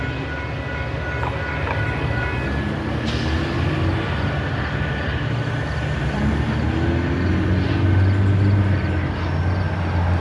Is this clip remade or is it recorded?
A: recorded